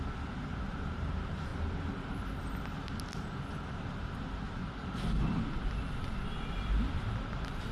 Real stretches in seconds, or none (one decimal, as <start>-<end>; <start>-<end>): 1.5-3.9; 4.6-6.3